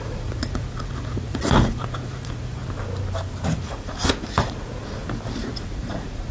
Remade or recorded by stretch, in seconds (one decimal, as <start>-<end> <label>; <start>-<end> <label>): 0.0-2.6 remade; 2.6-3.6 recorded; 3.6-5.0 remade; 5.0-5.6 recorded; 5.6-6.3 remade